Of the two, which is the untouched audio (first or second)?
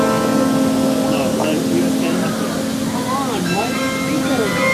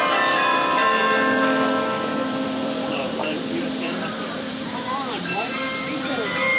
first